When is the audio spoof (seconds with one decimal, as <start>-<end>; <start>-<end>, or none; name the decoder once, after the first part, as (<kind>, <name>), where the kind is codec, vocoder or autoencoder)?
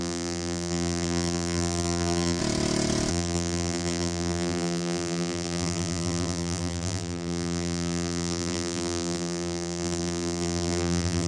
0.0-2.4 (vocoder, BigVGAN v2); 3.1-11.3